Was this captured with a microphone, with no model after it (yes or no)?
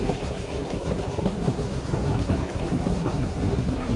no